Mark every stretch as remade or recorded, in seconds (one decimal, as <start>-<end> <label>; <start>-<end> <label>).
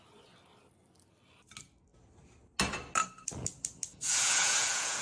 0.0-3.9 recorded; 3.9-5.0 remade